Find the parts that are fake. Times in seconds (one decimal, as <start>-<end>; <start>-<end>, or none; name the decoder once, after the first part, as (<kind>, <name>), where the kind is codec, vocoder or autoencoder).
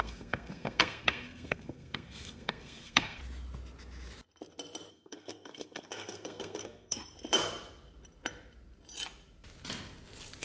0.0-3.2 (codec, SNAC); 4.9-7.0